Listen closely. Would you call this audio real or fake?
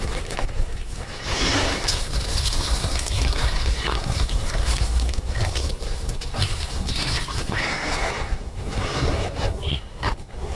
fake